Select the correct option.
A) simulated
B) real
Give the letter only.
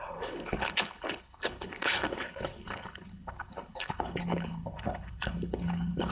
A